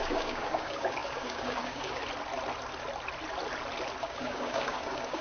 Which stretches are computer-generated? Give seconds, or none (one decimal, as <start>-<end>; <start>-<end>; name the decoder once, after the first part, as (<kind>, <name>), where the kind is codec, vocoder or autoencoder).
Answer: 0.0-2.0 (codec, DAC); 4.0-5.2